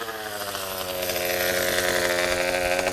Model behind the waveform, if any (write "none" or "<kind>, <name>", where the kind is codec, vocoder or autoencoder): none